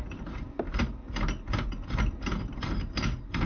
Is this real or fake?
real